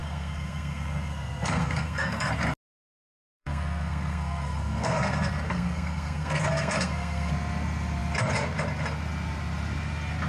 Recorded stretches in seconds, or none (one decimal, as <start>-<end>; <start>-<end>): 2.3-3.3; 7.3-10.3